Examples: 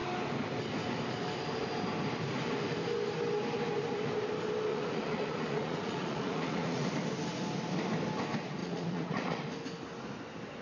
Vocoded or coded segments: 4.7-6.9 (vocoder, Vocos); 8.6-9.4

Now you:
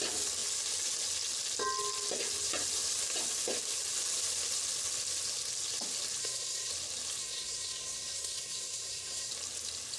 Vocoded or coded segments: 6.2-6.7 (codec, SNAC); 7.2-9.3

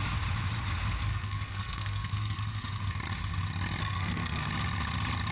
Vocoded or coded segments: 1.1-2.8 (codec, SNAC); 3.8-4.5

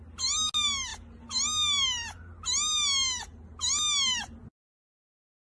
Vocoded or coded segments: none

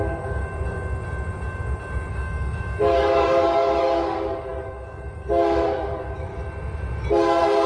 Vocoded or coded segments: 0.0-0.4 (codec, DAC); 2.1-6.3; 7.1-7.7

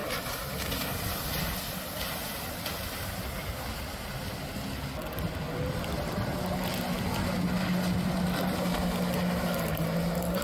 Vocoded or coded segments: none

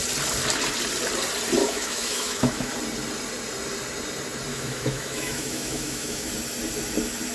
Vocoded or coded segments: 1.6-2.7 (autoencoder, DAC-VAE); 4.5-6.3